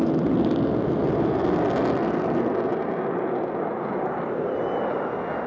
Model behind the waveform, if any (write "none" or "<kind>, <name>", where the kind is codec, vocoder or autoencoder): none